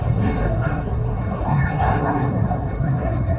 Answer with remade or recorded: remade